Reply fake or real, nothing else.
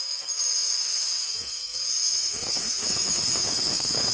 fake